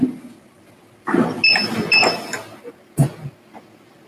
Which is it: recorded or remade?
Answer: recorded